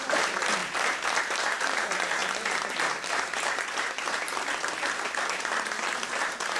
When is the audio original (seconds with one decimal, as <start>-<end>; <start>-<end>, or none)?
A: 0.6-1.2